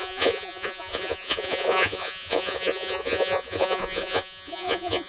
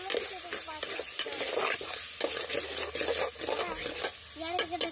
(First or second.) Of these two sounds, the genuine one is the second